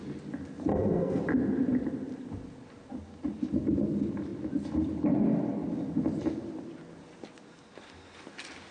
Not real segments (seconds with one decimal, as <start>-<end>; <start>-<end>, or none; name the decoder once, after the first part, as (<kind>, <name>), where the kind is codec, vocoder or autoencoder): 0.7-1.2 (codec, SNAC)